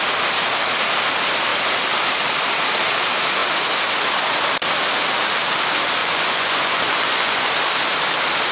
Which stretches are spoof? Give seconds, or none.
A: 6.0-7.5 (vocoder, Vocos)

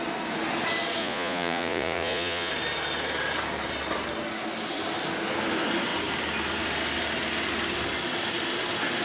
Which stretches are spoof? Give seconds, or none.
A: 1.0-2.5 (vocoder, Vocos)

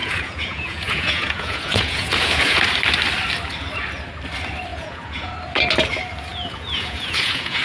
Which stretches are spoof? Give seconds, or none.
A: 0.0-2.6 (vocoder, Vocos); 4.7-5.3; 6.3-7.6

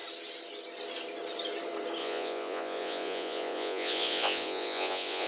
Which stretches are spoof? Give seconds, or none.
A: 2.0-5.3 (vocoder, Vocos)

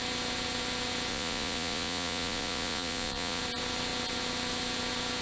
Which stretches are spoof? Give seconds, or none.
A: 1.1-3.4 (vocoder, Vocos)

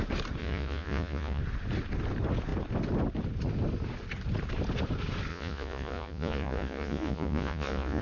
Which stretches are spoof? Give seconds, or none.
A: 0.4-1.4 (vocoder, Vocos); 5.3-8.0

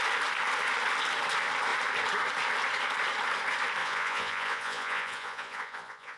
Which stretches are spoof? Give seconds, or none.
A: 3.8-6.2 (vocoder, Vocos)

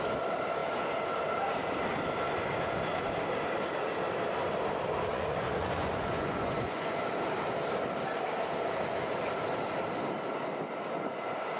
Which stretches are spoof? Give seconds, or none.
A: 5.1-7.2 (vocoder, Vocos)